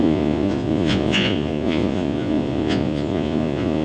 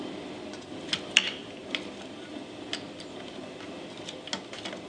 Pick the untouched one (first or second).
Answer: second